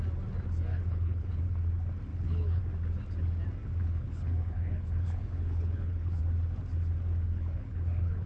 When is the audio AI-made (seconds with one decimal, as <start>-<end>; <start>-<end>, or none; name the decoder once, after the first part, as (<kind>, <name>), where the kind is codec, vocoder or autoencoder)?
0.7-1.4 (codec, HILCodec); 2.1-2.6; 3.8-6.2; 7.3-8.3